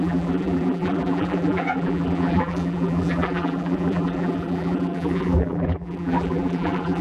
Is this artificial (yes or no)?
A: yes